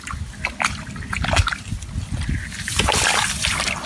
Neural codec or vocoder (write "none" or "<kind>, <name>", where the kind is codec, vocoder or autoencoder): none